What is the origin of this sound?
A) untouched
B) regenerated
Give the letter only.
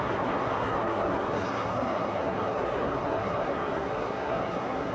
B